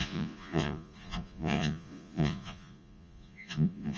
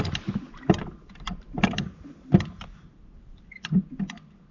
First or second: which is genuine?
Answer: second